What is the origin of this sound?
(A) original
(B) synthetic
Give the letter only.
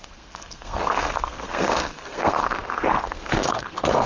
B